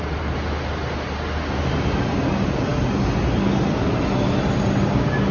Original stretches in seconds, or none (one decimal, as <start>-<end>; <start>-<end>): 0.0-5.3